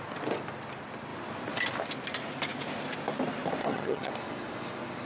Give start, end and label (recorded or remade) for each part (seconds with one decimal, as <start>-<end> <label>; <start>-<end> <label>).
0.0-3.6 recorded; 3.6-4.1 remade; 4.1-5.1 recorded